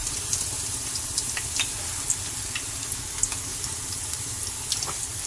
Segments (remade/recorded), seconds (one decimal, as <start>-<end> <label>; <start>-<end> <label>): 0.0-0.6 remade; 0.6-3.5 recorded; 3.5-4.4 remade; 4.4-5.3 recorded